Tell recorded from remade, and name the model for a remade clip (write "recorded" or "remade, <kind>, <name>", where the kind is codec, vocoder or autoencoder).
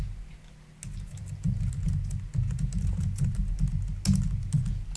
recorded